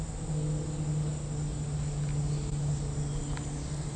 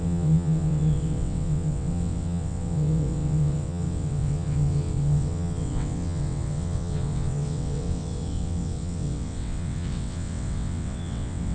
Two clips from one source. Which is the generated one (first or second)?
second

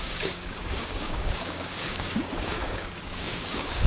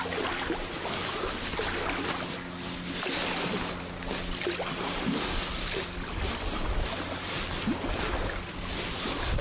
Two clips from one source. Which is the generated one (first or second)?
first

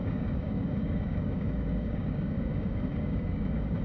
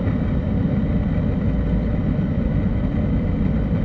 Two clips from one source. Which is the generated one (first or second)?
first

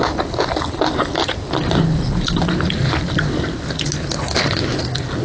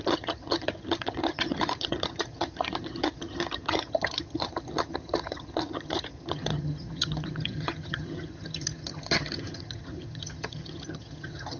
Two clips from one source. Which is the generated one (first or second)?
second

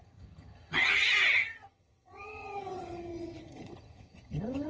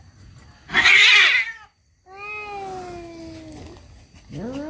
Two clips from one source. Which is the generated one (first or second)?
first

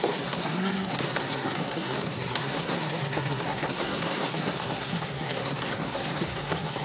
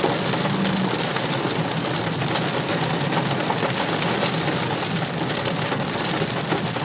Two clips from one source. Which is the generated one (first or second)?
first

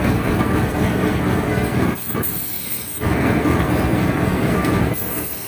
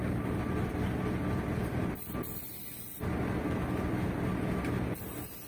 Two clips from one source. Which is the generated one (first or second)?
first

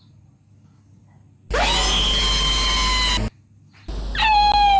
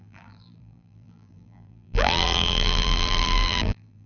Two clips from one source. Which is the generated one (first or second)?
second